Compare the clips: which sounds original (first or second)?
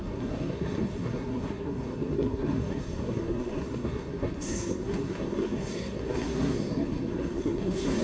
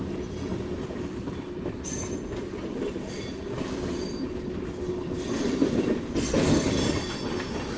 second